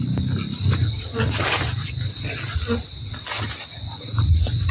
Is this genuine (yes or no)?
yes